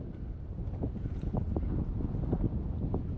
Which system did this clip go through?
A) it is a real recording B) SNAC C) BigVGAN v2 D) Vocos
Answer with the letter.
A